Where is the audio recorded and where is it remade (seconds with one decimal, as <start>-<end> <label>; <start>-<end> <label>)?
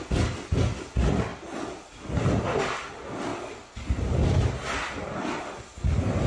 0.0-6.3 recorded